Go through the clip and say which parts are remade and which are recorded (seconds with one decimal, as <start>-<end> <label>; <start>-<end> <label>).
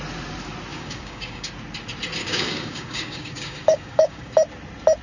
0.0-0.7 recorded; 0.7-1.5 remade; 1.5-2.2 recorded; 2.2-4.3 remade; 4.3-5.0 recorded